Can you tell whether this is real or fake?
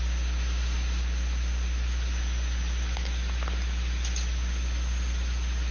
real